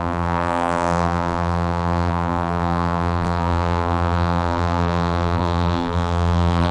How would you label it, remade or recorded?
remade